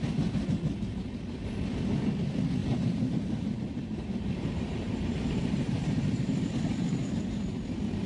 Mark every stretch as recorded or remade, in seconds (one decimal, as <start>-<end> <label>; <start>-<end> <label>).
0.0-2.6 recorded; 2.6-6.5 remade; 6.5-8.1 recorded